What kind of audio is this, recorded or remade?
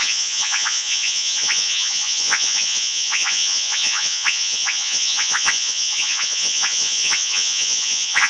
remade